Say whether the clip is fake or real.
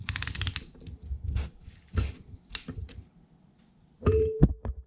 real